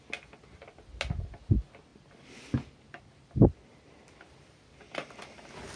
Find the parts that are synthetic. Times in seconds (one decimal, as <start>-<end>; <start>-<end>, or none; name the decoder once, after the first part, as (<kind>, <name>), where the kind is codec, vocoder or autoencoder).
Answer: none